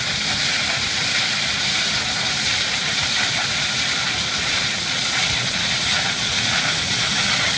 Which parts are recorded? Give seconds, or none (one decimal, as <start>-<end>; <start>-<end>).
0.0-4.4; 7.1-7.6